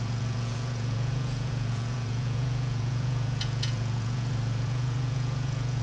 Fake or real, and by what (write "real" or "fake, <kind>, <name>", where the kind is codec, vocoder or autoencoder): fake, vocoder, Vocos